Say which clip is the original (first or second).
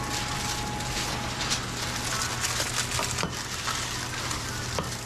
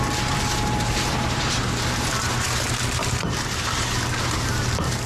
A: first